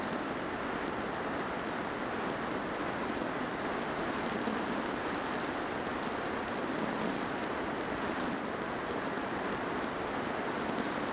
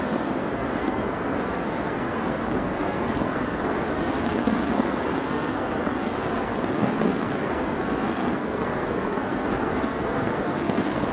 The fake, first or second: second